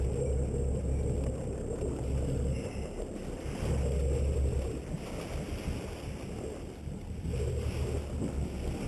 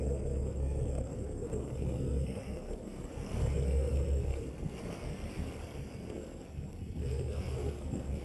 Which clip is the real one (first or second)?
first